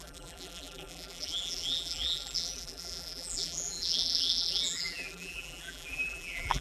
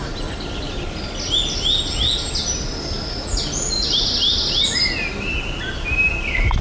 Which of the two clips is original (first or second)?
second